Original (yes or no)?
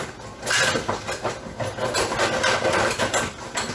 yes